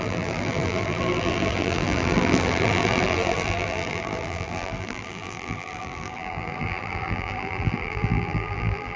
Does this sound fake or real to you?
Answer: fake